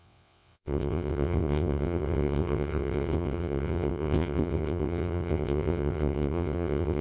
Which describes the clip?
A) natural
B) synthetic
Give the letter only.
B